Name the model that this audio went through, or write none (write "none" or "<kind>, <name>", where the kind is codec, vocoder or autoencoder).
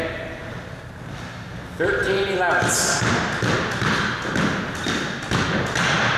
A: none